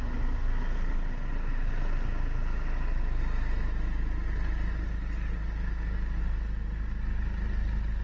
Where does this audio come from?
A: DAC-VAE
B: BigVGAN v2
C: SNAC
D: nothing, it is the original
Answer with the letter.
D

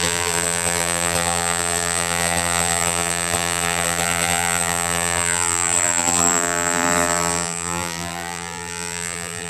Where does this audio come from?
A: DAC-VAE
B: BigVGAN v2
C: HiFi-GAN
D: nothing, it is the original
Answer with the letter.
B